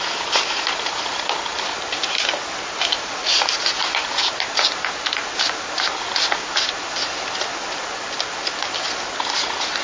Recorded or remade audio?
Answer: recorded